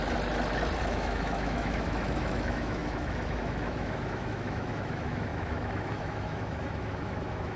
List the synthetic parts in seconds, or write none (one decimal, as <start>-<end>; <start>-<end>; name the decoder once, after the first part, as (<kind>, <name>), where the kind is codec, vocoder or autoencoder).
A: 0.8-7.6 (autoencoder, DAC-VAE)